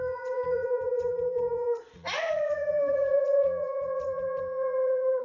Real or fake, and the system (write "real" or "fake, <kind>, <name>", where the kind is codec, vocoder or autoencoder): fake, vocoder, Vocos